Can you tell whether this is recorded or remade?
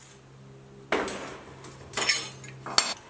recorded